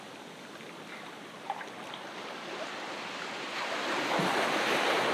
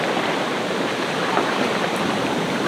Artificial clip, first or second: second